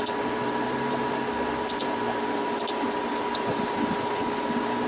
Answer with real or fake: fake